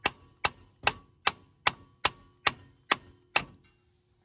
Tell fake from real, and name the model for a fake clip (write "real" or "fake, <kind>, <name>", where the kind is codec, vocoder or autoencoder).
real